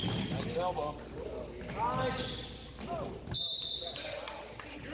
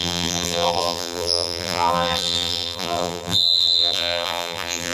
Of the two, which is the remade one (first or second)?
second